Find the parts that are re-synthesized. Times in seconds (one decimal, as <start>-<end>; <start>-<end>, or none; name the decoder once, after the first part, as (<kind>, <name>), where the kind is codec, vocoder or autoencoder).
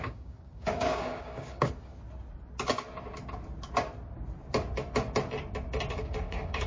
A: 0.0-1.9 (codec, DAC); 5.9-6.7